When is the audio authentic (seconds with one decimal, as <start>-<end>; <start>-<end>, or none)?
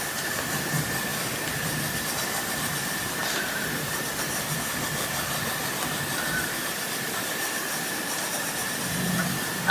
1.1-2.0; 3.2-6.1